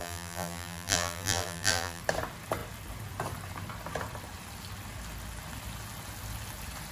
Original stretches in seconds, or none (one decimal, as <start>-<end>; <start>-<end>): 2.0-6.9